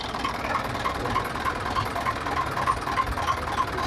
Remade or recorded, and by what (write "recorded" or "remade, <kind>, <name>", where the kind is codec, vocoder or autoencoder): recorded